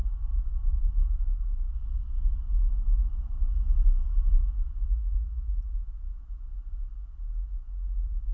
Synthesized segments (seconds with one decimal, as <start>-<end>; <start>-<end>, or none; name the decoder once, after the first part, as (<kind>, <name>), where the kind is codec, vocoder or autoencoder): 4.8-5.6 (vocoder, Vocos)